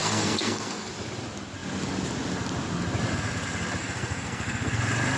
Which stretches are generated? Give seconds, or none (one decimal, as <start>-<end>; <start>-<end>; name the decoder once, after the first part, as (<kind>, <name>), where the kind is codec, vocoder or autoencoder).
0.0-0.9 (codec, SNAC); 3.8-4.8